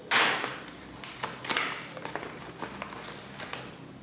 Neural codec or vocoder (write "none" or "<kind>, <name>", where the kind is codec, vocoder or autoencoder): none